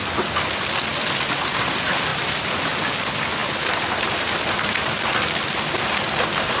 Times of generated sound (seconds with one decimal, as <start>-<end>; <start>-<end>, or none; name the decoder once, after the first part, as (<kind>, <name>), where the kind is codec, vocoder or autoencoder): 2.1-2.6 (vocoder, BigVGAN v2)